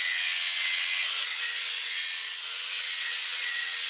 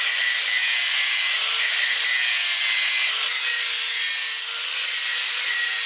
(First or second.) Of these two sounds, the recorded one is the second